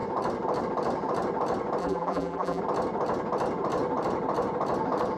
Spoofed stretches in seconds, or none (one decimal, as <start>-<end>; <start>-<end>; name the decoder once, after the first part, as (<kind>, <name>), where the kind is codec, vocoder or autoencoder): 1.8-2.6 (vocoder, BigVGAN v2)